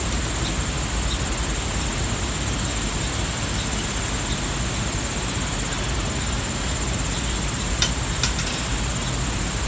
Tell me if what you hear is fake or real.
real